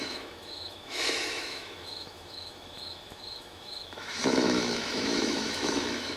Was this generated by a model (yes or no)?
yes